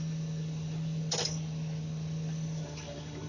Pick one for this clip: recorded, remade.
recorded